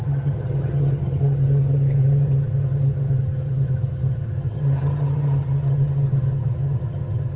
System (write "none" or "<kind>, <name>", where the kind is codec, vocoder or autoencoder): vocoder, HiFi-GAN